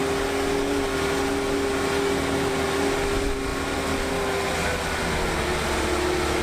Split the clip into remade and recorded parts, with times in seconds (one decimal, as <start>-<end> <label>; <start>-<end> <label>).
0.0-3.5 recorded; 3.5-4.1 remade; 4.1-6.4 recorded